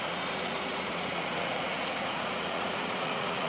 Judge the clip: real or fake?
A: fake